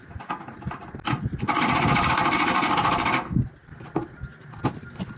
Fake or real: real